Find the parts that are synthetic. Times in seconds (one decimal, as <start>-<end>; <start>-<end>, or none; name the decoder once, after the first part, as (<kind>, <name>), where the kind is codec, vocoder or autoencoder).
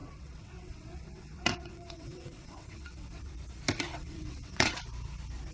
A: 0.0-3.3 (vocoder, WaveNeXt); 3.9-4.7